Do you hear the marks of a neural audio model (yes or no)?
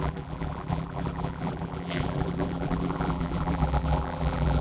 yes